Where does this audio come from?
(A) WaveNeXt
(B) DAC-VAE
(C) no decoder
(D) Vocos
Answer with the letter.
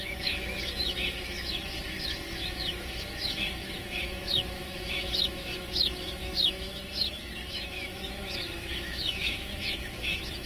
B